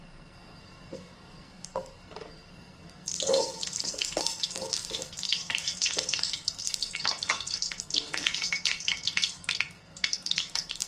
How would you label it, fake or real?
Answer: fake